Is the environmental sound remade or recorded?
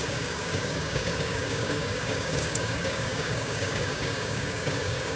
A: remade